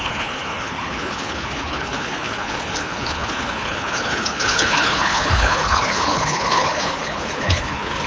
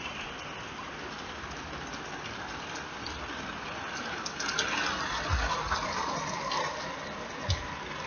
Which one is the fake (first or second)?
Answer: first